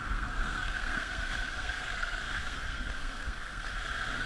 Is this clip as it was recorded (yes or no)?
no